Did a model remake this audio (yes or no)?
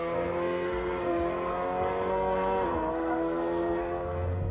yes